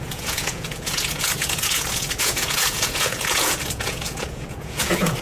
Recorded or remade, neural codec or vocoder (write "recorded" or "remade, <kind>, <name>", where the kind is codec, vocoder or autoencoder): remade, vocoder, Vocos